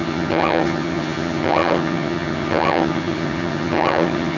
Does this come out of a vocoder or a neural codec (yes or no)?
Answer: yes